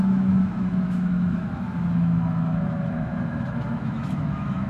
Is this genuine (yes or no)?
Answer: no